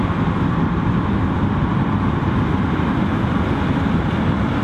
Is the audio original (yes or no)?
no